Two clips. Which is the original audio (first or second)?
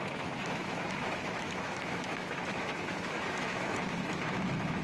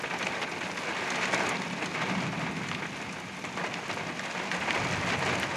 second